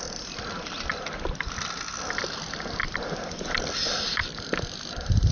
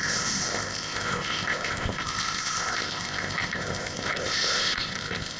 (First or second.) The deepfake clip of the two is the second